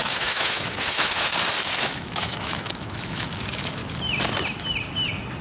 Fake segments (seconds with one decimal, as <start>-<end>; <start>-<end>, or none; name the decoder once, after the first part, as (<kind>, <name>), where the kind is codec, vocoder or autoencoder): 0.0-1.3 (autoencoder, DAC-VAE); 1.8-3.8